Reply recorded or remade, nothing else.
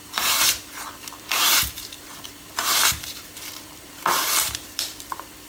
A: remade